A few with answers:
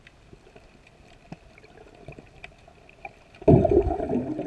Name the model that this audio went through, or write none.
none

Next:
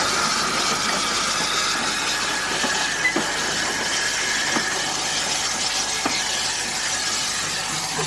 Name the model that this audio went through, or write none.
none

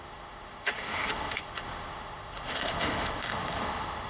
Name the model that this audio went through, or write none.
autoencoder, DAC-VAE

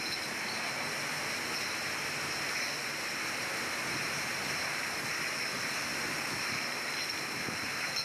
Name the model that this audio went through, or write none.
none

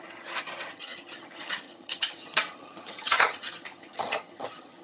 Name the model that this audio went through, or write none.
vocoder, HiFi-GAN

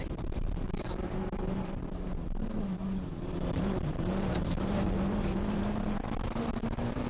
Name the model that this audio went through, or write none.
vocoder, BigVGAN v2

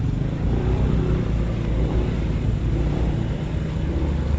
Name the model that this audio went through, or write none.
none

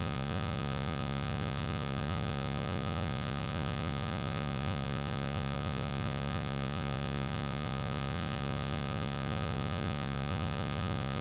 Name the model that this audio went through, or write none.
vocoder, Vocos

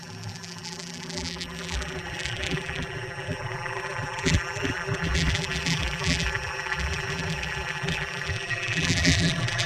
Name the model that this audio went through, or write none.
vocoder, BigVGAN v2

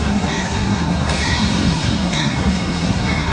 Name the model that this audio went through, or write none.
codec, SNAC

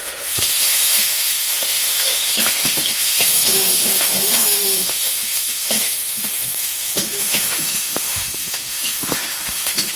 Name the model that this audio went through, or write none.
autoencoder, DAC-VAE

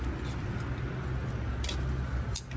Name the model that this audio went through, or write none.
none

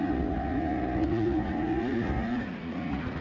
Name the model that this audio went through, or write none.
vocoder, Vocos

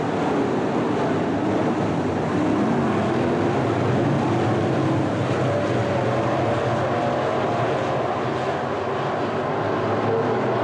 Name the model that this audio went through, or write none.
none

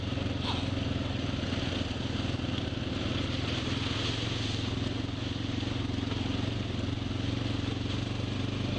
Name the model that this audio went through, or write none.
none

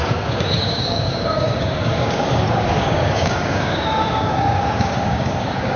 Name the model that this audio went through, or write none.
codec, DAC